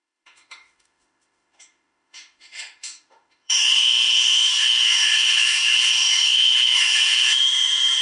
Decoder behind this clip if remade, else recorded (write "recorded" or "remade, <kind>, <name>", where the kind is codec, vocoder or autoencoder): remade, autoencoder, DAC-VAE